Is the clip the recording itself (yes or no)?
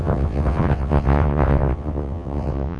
no